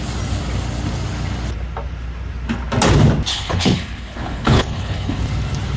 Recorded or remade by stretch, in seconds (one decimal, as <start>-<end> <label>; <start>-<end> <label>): 0.0-3.3 recorded; 3.3-5.2 remade; 5.2-5.8 recorded